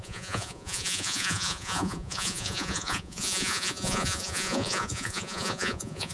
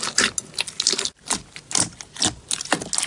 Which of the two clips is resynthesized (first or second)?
first